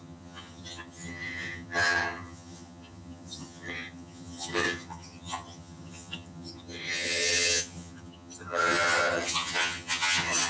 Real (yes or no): no